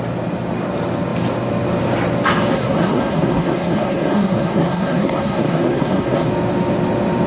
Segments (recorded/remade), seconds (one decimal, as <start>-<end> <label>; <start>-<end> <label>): 0.0-2.5 recorded; 2.5-6.3 remade; 6.3-7.3 recorded